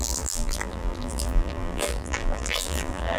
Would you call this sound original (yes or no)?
no